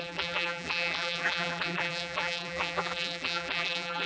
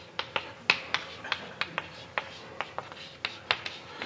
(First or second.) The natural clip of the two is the second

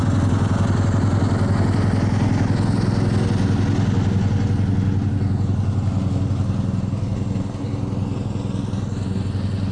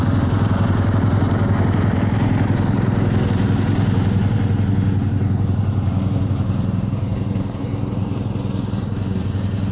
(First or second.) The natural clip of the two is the first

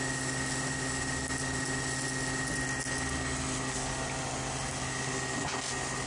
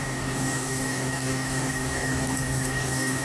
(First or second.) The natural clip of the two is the first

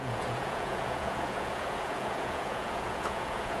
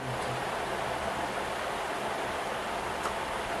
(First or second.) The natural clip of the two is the second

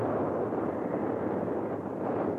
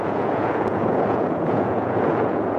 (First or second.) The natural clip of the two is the first